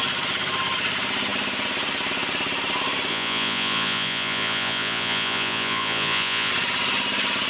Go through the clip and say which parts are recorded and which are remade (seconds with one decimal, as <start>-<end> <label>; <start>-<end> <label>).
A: 0.0-3.1 recorded; 3.1-6.5 remade; 6.5-7.5 recorded